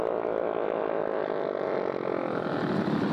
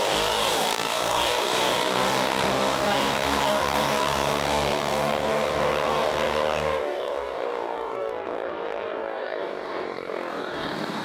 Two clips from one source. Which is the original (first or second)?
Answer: first